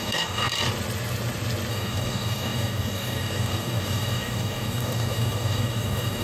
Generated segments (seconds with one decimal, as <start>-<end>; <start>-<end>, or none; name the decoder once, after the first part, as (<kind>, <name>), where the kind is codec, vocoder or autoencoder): 0.0-0.5 (codec, DAC); 1.7-6.2